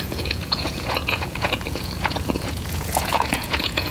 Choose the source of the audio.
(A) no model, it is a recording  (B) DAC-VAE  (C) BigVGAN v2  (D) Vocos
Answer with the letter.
D